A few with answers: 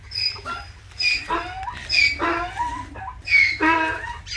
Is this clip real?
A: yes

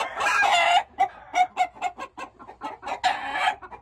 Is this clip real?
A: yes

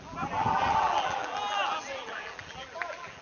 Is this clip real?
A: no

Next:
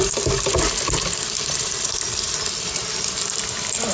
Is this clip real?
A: no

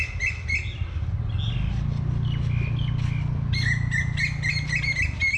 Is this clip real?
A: yes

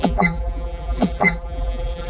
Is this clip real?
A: no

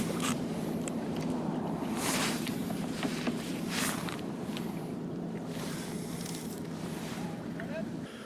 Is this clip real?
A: no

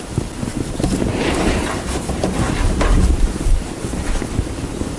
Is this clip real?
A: yes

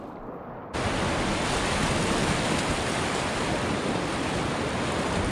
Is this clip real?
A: yes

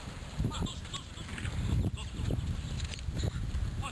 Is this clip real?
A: no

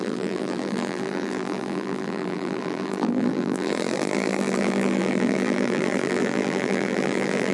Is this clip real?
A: no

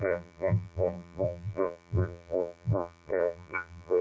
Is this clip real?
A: no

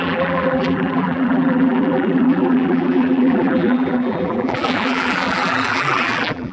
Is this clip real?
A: no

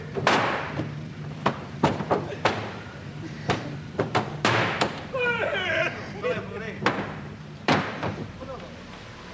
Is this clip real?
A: no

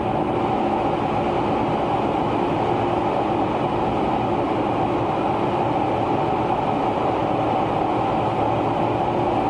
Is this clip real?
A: yes